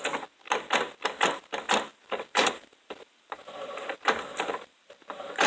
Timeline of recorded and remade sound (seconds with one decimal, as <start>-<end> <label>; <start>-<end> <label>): 0.0-1.9 recorded; 1.9-5.5 remade